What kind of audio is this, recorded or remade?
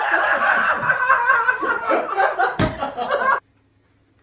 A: recorded